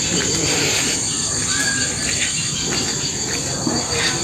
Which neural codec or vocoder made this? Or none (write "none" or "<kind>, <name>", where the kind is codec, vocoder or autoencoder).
none